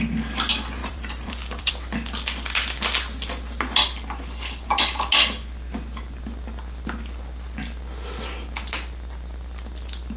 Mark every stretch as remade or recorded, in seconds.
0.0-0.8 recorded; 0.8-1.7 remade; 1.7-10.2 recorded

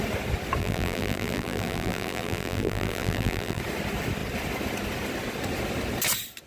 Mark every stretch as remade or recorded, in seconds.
0.0-0.6 recorded; 0.6-3.6 remade; 3.6-6.5 recorded

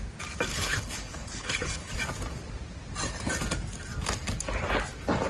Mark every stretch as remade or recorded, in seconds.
0.0-0.5 recorded; 0.5-1.9 remade; 1.9-5.3 recorded